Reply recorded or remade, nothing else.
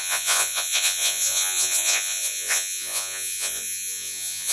remade